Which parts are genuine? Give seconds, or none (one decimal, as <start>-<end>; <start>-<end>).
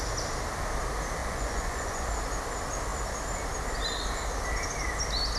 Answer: 0.0-1.2; 2.1-5.4